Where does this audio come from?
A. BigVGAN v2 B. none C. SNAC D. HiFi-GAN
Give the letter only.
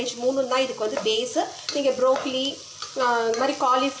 B